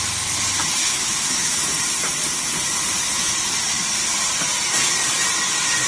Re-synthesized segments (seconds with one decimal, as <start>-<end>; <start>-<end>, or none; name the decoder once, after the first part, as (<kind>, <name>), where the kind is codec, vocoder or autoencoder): 0.8-1.6 (autoencoder, DAC-VAE)